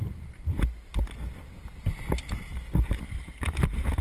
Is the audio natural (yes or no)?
yes